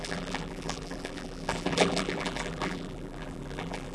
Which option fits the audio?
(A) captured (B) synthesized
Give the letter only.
B